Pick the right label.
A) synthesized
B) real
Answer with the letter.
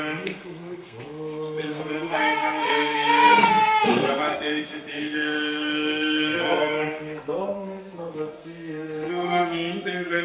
A